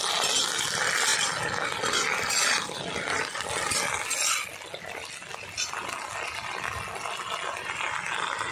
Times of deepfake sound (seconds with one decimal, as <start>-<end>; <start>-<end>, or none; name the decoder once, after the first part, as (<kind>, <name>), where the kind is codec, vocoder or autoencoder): none